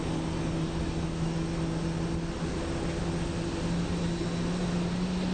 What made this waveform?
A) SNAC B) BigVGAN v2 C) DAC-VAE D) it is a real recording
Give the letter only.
D